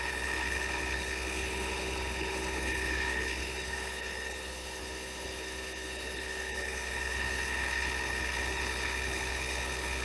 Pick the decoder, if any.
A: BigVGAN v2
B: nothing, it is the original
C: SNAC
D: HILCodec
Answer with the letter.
D